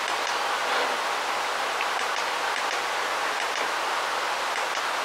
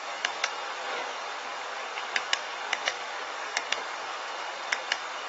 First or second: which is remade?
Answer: second